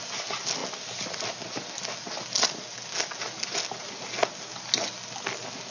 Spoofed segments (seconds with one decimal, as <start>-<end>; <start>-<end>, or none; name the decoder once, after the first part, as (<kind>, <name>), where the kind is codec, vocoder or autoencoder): none